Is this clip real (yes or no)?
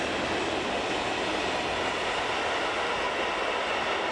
yes